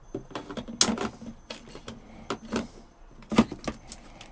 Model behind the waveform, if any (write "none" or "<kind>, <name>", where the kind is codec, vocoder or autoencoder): none